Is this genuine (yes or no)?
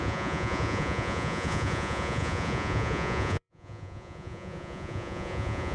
no